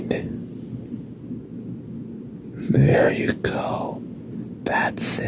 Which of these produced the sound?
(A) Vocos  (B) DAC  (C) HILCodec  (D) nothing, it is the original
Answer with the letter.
D